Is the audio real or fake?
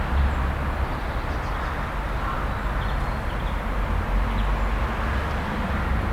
real